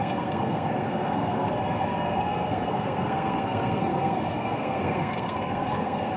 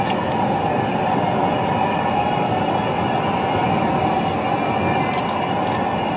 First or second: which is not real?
first